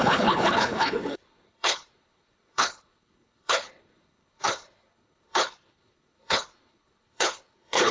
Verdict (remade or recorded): remade